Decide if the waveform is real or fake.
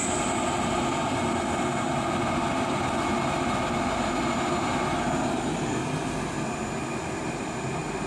real